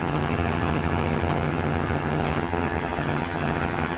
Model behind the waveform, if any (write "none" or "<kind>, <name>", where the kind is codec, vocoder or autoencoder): vocoder, HiFi-GAN